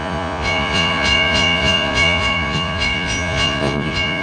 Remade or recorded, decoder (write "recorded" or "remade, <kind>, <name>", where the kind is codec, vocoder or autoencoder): remade, vocoder, Vocos